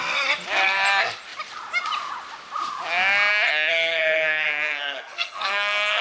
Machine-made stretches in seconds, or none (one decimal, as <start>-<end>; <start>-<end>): 3.7-6.0